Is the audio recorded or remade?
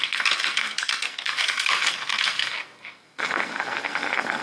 remade